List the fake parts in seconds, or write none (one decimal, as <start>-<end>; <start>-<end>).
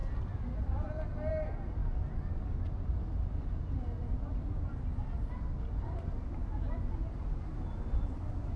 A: none